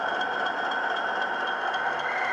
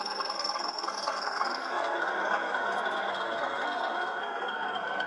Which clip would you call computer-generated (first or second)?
second